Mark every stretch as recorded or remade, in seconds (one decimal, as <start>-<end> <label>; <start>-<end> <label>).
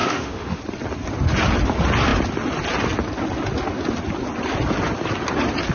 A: 0.0-0.6 remade; 0.6-5.7 recorded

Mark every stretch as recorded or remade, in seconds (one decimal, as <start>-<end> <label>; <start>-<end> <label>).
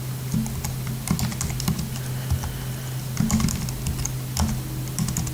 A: 0.0-5.3 recorded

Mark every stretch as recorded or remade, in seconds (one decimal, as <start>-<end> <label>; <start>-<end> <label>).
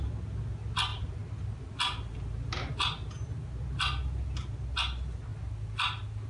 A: 0.0-6.3 recorded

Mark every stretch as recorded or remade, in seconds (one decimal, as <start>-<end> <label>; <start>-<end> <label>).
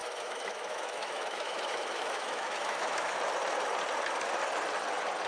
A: 0.0-3.2 remade; 3.2-5.3 recorded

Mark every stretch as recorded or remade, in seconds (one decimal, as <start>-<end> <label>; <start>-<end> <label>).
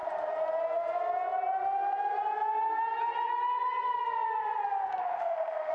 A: 0.0-5.0 recorded; 5.0-5.7 remade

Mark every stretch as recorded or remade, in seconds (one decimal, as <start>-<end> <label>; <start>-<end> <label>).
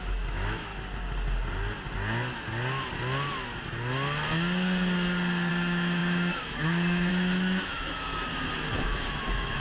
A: 0.0-0.7 remade; 0.7-5.5 recorded; 5.5-8.1 remade; 8.1-8.7 recorded; 8.7-9.6 remade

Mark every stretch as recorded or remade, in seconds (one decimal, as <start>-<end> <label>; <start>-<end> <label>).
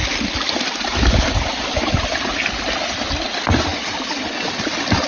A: 0.0-5.1 recorded